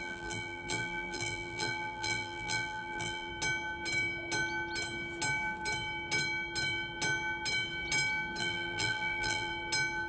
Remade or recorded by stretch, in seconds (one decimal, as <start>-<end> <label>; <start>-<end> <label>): 0.0-3.3 remade; 3.3-8.4 recorded; 8.4-9.5 remade; 9.5-10.1 recorded